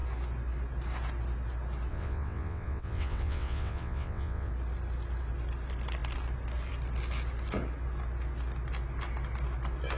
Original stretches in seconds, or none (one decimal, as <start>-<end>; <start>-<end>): 0.0-1.9; 4.5-10.0